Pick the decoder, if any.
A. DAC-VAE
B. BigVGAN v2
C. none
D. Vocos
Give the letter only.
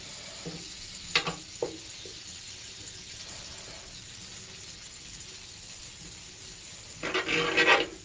C